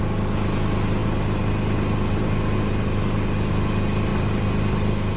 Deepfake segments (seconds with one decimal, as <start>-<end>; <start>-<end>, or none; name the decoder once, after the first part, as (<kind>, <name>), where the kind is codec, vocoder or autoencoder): 4.1-5.2 (vocoder, BigVGAN v2)